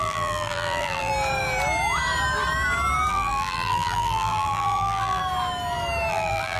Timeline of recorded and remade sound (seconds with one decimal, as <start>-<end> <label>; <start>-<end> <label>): 0.0-1.1 remade; 1.1-3.1 recorded; 3.1-5.2 remade; 5.2-6.1 recorded; 6.1-6.6 remade